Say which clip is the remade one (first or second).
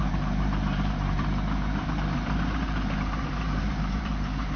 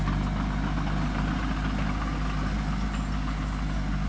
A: first